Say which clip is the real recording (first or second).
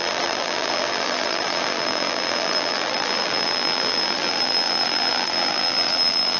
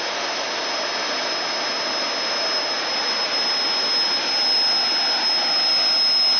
second